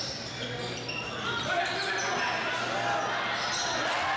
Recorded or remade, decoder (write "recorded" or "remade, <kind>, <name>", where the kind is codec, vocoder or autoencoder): recorded